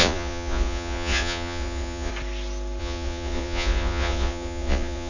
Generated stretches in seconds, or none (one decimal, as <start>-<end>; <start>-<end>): 0.0-2.1; 2.8-5.1